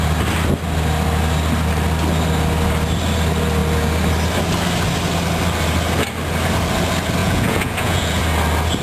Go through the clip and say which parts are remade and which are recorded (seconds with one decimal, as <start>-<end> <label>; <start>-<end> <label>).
0.0-7.2 recorded; 7.2-8.2 remade; 8.2-8.8 recorded